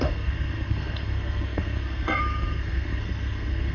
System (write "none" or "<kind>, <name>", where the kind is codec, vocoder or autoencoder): codec, SNAC